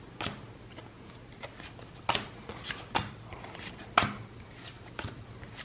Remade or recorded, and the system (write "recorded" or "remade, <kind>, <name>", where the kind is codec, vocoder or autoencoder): recorded